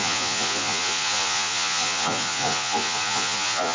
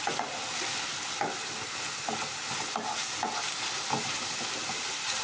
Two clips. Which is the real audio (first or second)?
second